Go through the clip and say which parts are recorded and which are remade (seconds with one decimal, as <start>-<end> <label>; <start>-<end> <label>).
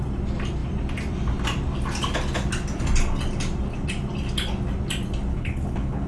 0.0-5.3 recorded; 5.3-6.1 remade